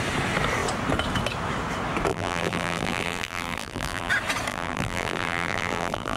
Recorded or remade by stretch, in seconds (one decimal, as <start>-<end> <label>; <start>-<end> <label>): 0.0-2.1 recorded; 2.1-4.1 remade; 4.1-4.5 recorded; 4.5-6.2 remade

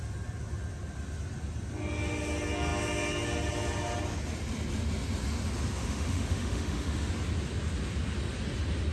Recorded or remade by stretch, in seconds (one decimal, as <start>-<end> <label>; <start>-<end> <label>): 0.0-5.8 recorded; 5.8-7.1 remade; 7.1-8.9 recorded